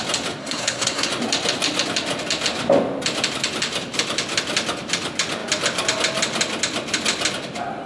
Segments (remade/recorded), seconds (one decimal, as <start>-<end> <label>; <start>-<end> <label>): 0.0-0.4 recorded; 0.4-1.1 remade; 1.1-7.9 recorded